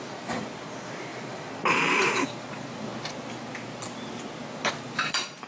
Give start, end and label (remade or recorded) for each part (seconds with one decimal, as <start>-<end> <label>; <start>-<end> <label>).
0.0-2.9 remade; 2.9-4.5 recorded; 4.5-5.5 remade